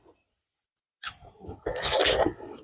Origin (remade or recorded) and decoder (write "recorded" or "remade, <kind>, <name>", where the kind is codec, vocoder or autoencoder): recorded